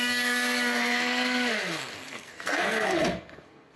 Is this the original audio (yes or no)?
no